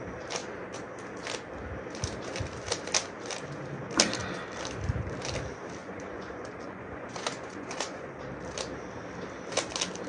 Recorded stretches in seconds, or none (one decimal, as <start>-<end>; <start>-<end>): 0.0-5.8; 8.1-10.1